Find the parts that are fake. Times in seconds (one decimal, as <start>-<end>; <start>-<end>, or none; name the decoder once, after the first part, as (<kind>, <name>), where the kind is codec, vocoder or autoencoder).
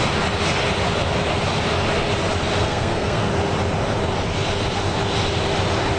2.6-3.3 (codec, SNAC)